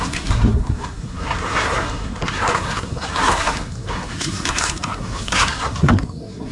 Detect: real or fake fake